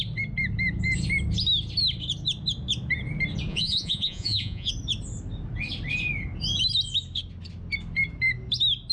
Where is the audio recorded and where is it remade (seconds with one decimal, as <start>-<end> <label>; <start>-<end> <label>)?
0.0-3.5 recorded; 3.5-4.7 remade; 4.7-8.9 recorded